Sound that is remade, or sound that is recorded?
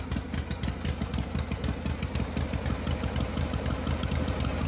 recorded